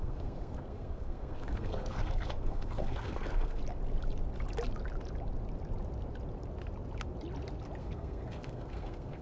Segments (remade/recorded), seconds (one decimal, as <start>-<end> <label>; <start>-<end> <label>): 0.0-3.6 remade; 3.6-7.8 recorded; 7.8-9.2 remade